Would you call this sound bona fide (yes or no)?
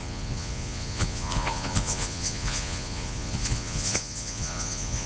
no